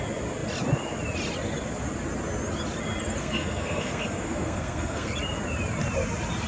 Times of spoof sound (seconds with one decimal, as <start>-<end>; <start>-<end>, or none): 3.2-5.1